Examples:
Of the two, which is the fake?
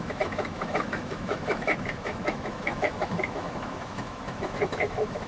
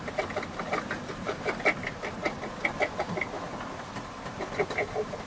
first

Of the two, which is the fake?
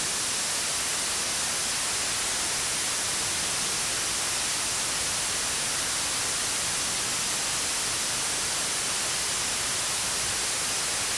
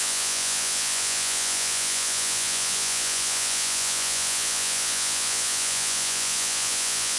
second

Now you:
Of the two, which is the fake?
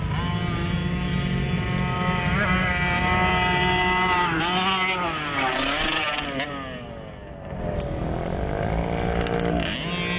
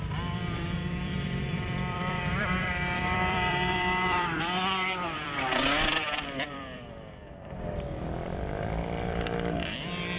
second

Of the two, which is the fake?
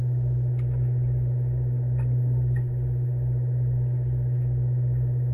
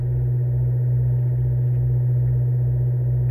first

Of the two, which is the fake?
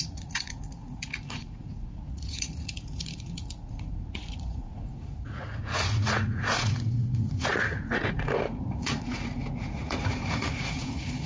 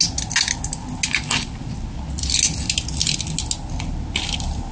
first